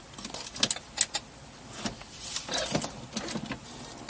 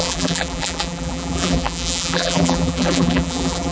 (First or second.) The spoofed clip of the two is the second